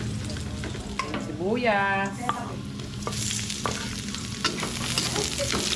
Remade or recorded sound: recorded